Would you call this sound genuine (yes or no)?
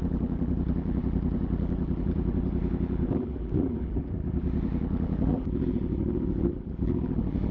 no